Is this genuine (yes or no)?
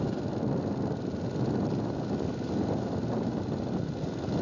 yes